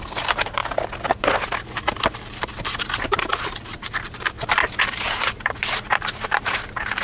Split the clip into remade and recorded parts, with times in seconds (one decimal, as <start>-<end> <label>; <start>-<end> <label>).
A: 0.0-0.6 remade; 0.6-1.2 recorded; 1.2-7.0 remade